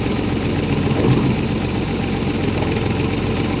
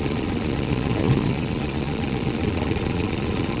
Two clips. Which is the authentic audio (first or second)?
first